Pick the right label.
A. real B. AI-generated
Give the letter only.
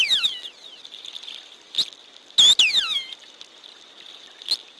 A